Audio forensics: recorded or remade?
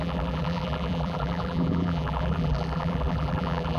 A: remade